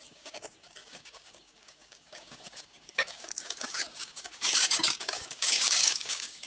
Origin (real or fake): fake